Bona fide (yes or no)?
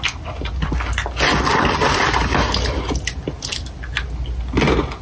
yes